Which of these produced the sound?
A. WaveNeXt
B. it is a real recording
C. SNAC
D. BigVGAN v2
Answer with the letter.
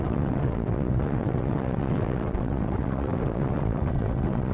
A